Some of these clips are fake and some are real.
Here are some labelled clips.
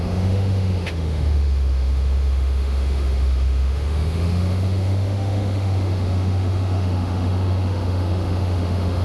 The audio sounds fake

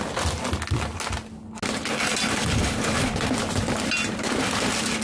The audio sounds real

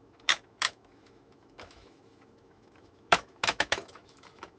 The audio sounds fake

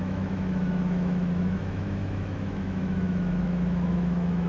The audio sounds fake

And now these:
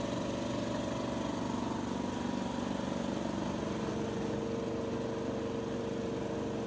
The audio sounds real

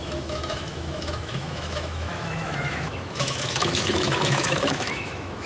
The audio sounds fake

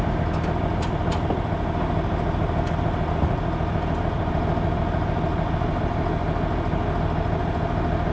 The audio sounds real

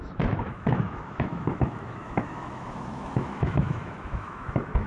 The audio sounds fake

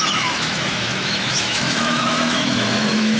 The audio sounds fake